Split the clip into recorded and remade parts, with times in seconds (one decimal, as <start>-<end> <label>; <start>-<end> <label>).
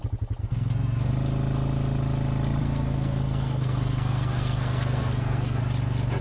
0.0-0.4 recorded; 0.4-1.1 remade; 1.1-2.6 recorded; 2.6-5.6 remade; 5.6-6.2 recorded